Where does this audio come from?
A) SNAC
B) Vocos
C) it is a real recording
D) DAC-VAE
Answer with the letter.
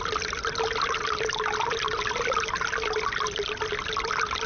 C